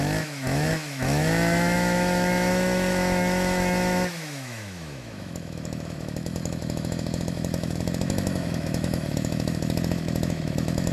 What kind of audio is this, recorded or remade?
remade